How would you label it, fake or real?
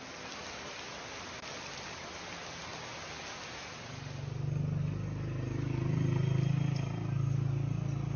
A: real